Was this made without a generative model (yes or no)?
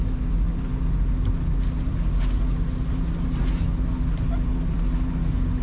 yes